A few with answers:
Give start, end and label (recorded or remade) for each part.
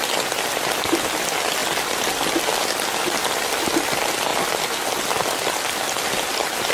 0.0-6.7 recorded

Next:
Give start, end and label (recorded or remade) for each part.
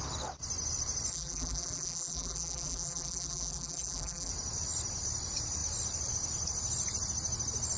0.0-1.1 recorded; 1.1-4.3 remade; 4.3-7.8 recorded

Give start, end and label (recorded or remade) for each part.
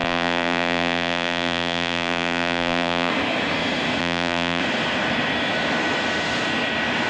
0.0-3.1 remade; 3.1-4.0 recorded; 4.0-4.6 remade; 4.6-7.1 recorded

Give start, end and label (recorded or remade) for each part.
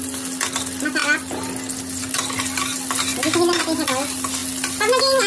0.0-5.3 recorded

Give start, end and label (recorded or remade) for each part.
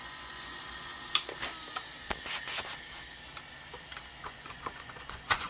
0.0-0.9 remade; 0.9-4.2 recorded; 4.2-5.5 remade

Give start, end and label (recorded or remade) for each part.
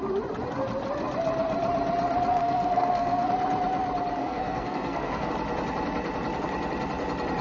0.0-2.3 recorded; 2.3-3.3 remade; 3.3-4.2 recorded; 4.2-5.3 remade; 5.3-7.4 recorded